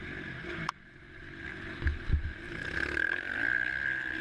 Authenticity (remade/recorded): recorded